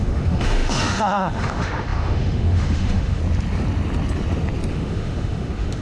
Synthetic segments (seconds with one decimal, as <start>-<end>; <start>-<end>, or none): 0.0-3.2; 4.7-5.8